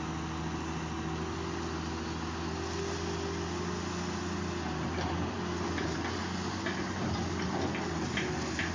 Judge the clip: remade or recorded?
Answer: recorded